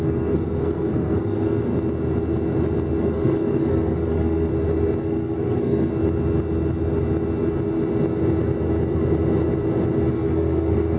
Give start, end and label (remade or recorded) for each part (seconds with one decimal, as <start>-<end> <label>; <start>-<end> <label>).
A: 0.0-1.7 remade; 1.7-3.0 recorded; 3.0-4.5 remade; 4.5-5.0 recorded; 5.0-5.9 remade; 5.9-10.1 recorded; 10.1-11.0 remade